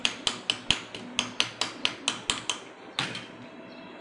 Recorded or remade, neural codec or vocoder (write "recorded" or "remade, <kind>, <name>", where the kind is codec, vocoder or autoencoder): recorded